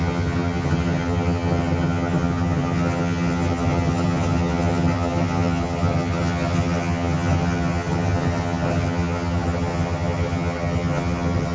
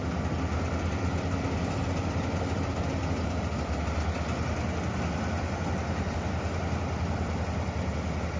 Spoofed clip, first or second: first